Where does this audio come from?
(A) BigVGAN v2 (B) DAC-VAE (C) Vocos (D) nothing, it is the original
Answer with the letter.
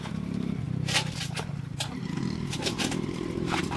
A